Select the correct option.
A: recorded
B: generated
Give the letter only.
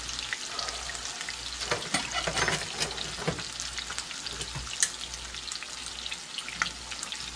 A